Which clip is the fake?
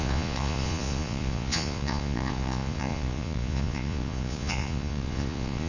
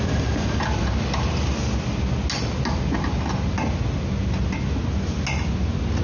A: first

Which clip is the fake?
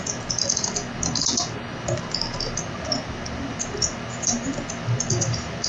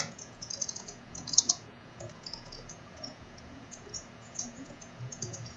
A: second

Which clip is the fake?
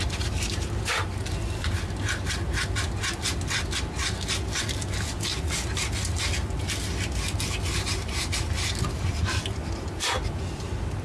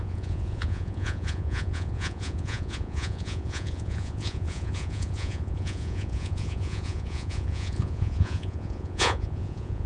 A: second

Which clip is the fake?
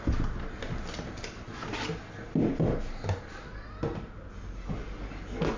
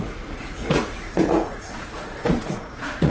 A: second